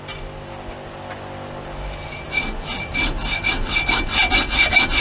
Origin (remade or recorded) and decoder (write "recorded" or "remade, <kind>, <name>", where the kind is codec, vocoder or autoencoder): recorded